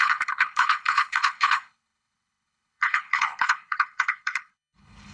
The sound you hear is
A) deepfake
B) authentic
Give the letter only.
A